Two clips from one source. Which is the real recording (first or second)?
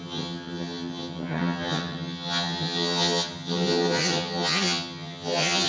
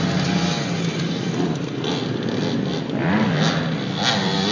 second